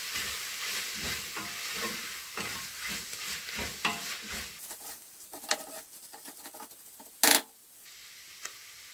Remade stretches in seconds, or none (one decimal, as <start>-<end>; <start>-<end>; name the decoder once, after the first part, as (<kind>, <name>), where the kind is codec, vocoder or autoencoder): none